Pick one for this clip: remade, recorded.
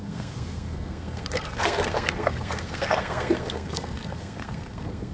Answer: remade